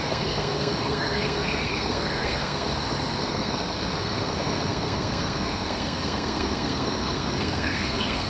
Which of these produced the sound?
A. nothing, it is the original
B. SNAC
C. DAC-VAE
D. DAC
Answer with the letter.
B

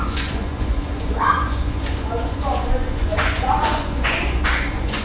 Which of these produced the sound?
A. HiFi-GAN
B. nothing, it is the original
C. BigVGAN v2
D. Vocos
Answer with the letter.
D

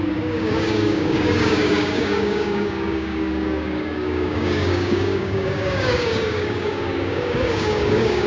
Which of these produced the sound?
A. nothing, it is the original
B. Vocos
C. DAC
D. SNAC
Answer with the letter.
C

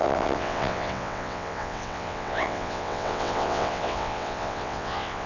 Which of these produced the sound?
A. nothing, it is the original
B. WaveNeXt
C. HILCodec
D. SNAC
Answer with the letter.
B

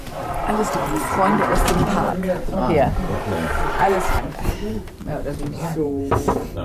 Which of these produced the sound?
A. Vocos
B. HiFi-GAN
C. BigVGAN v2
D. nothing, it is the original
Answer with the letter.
C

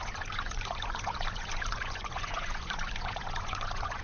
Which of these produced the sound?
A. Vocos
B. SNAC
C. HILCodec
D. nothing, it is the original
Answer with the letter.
A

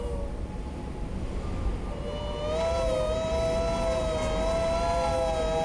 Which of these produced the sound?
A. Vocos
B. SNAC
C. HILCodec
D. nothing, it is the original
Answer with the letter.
D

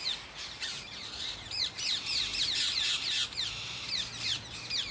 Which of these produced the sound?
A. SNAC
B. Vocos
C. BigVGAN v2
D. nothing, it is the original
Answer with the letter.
C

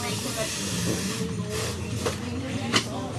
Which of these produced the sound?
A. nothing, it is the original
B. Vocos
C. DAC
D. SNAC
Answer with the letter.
A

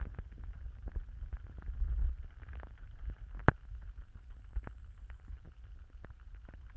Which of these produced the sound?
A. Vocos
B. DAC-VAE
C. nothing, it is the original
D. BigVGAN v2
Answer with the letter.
C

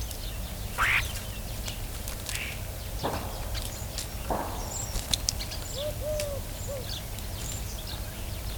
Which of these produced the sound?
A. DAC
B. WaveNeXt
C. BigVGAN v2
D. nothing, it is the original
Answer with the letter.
D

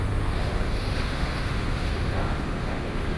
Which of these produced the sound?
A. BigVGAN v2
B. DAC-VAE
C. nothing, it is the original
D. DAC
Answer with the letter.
B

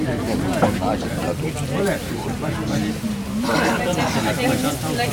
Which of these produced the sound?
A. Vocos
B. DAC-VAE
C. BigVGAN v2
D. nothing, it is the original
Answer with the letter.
C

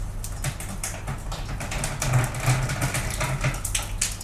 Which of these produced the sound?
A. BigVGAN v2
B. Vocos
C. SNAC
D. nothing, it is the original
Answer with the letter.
D